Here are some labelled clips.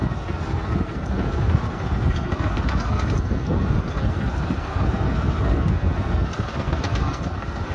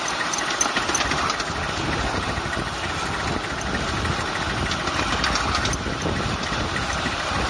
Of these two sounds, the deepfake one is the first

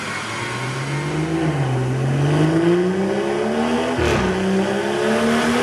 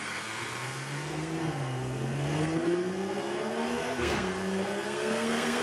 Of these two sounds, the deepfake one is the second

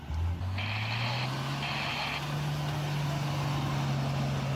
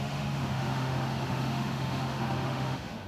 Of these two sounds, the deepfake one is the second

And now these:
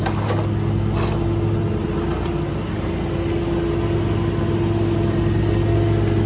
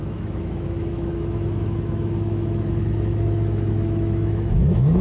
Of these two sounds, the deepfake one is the second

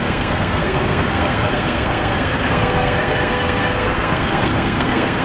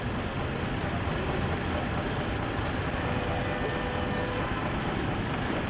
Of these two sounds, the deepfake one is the first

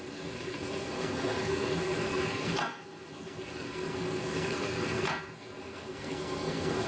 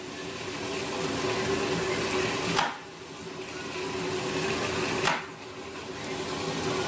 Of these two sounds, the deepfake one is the first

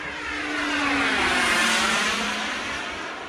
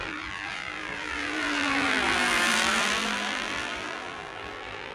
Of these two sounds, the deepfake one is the second